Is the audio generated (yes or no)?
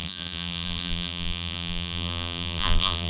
yes